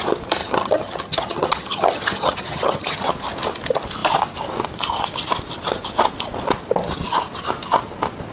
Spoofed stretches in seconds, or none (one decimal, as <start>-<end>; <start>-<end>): 0.4-3.1